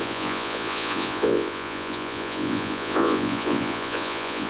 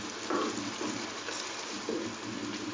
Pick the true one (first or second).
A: second